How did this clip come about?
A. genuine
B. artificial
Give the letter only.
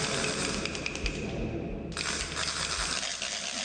A